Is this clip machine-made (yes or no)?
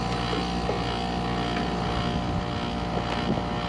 no